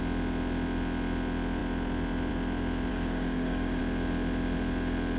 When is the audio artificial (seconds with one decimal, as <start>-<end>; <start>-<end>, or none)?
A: 2.9-3.8

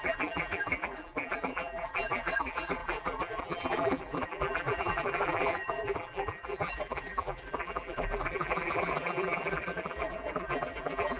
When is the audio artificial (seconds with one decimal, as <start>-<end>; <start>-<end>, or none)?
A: 0.0-11.2

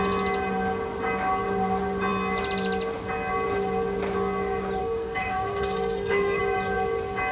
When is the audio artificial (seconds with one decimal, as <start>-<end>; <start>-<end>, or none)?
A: 4.8-6.4

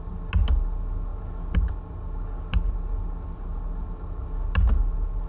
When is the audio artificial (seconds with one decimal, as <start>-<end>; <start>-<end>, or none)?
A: none

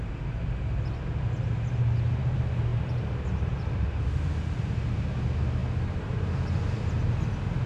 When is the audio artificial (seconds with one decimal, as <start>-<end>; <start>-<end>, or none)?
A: none

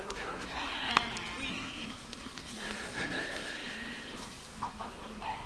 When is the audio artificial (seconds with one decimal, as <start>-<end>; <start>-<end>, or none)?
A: 0.0-0.9; 1.5-5.5

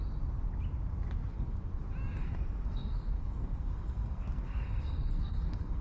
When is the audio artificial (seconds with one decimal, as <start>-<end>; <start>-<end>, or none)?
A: 1.2-1.8; 2.2-5.8

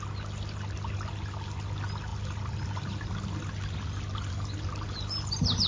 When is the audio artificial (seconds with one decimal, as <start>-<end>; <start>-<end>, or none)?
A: none